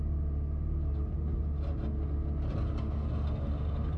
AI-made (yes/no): no